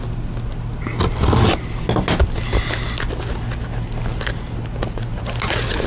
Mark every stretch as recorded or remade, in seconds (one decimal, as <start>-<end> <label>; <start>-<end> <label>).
0.0-5.9 recorded